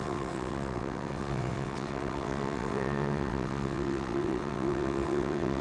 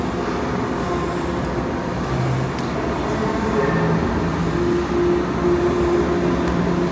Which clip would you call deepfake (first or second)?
first